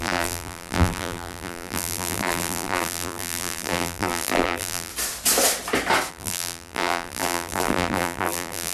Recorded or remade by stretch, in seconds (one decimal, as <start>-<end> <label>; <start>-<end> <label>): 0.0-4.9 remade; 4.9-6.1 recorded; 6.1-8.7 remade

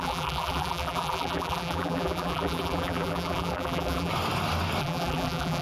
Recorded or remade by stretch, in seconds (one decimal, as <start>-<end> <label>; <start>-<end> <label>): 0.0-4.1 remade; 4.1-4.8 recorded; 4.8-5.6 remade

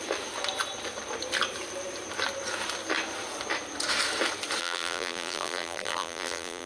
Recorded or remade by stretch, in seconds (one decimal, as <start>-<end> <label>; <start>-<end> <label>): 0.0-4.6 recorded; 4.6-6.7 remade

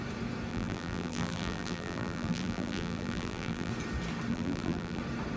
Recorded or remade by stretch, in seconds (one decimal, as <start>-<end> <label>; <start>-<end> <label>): 0.0-0.5 recorded; 0.5-3.7 remade; 3.7-4.3 recorded; 4.3-5.0 remade; 5.0-5.4 recorded

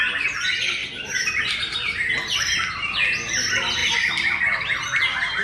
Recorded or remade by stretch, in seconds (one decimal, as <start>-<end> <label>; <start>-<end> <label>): 0.0-0.8 recorded; 0.8-2.7 remade; 2.7-3.8 recorded; 3.8-4.4 remade; 4.4-5.4 recorded

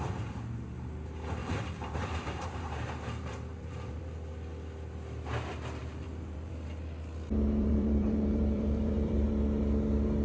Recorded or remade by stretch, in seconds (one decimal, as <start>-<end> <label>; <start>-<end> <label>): 0.0-1.4 recorded; 1.4-4.0 remade; 4.0-5.8 recorded; 5.8-6.5 remade; 6.5-7.6 recorded; 7.6-9.3 remade; 9.3-10.2 recorded